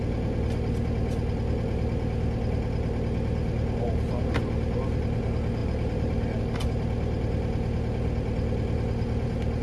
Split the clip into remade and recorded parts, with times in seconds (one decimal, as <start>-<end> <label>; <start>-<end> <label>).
0.0-5.6 recorded; 5.6-6.4 remade; 6.4-9.6 recorded